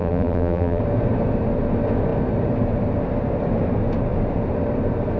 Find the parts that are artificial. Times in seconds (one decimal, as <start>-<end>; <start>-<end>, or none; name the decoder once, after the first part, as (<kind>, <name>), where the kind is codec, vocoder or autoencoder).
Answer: 0.0-0.8 (vocoder, BigVGAN v2)